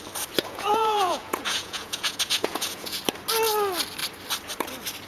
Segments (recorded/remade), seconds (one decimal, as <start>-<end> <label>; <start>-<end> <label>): 0.0-0.4 recorded; 0.4-3.0 remade; 3.0-5.1 recorded